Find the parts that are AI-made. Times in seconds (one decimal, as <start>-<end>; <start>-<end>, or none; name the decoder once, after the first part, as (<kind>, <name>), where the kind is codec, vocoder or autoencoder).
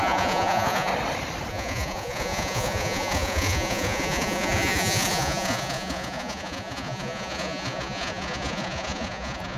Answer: 0.0-0.9 (vocoder, Vocos); 1.5-9.6